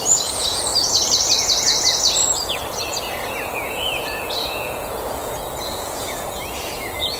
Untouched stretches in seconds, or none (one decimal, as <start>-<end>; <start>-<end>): 0.7-3.4

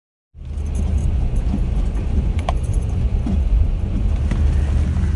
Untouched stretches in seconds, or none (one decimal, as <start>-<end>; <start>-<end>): 0.0-1.0; 4.1-5.2

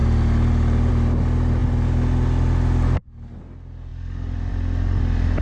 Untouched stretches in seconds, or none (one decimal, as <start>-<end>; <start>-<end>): 0.0-5.4

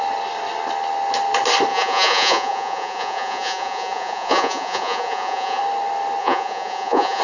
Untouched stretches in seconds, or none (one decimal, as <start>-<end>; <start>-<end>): 0.0-1.7; 5.6-6.2

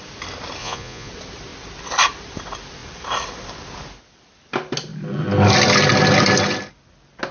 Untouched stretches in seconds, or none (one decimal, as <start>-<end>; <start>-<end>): 0.0-0.6; 1.1-7.3